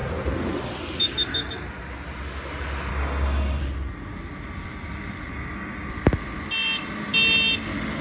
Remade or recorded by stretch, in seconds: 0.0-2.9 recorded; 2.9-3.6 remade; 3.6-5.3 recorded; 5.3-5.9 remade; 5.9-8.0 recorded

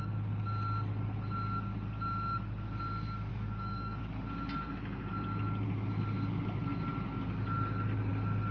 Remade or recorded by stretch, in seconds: 0.0-3.3 recorded; 3.3-4.0 remade; 4.0-8.5 recorded

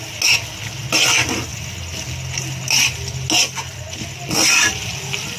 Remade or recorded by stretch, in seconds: 0.0-5.4 recorded

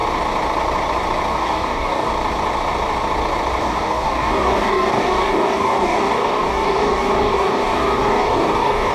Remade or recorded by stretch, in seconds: 0.0-1.3 recorded; 1.3-2.1 remade; 2.1-3.6 recorded; 3.6-8.9 remade